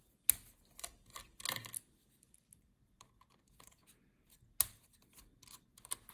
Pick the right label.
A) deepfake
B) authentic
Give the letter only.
B